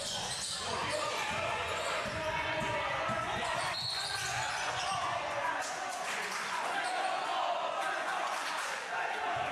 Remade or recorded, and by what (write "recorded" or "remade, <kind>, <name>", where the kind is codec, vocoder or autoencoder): remade, vocoder, Vocos